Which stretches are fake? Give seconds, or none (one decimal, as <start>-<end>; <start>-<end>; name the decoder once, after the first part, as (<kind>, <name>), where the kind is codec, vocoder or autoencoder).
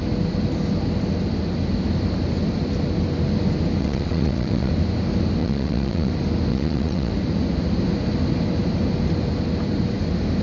3.8-4.7 (vocoder, WaveNeXt); 5.4-6.1; 6.5-7.1